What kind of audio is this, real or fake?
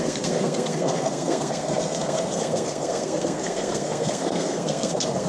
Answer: fake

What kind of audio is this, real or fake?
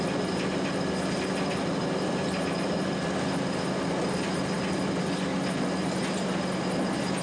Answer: real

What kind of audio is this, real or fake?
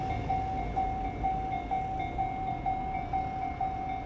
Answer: real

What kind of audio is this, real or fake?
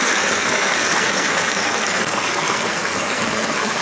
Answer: fake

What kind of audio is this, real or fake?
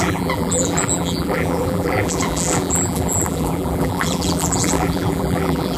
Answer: fake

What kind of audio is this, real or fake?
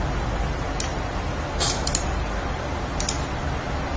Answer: real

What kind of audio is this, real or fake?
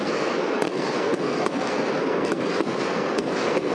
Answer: fake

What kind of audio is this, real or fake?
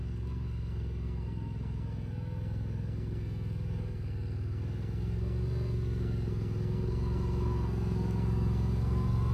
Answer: fake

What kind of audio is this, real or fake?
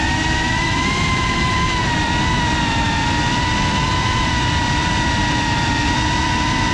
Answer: fake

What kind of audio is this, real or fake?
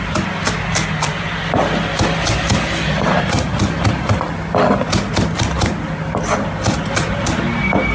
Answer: real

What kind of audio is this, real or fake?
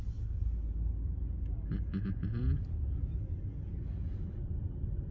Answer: real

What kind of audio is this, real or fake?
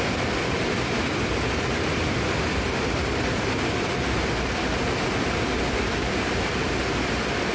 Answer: fake